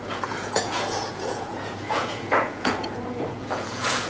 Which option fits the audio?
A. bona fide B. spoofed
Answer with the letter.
B